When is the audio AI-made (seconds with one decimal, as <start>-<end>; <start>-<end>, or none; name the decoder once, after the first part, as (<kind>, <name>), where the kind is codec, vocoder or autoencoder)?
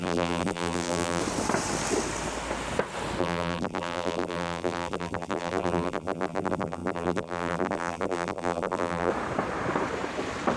0.0-1.2 (vocoder, BigVGAN v2); 3.2-9.1